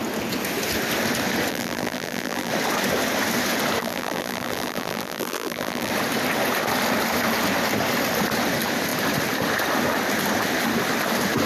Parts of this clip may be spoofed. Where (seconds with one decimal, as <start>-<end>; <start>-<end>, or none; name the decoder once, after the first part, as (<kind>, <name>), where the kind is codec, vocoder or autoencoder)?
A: 1.5-2.5 (vocoder, BigVGAN v2); 3.8-5.9